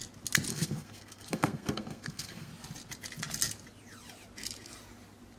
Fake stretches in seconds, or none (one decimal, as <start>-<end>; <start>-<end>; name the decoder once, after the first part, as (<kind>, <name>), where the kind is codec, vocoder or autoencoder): 0.5-2.5 (codec, SNAC)